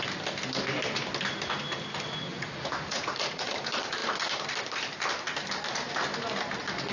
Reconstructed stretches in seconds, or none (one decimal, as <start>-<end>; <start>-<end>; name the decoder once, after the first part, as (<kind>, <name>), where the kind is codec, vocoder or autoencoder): 2.3-3.5 (vocoder, Vocos)